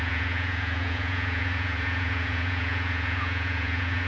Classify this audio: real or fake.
fake